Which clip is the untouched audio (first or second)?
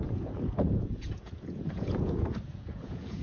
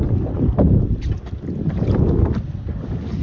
second